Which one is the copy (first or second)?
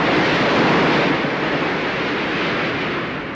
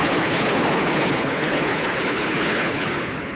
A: second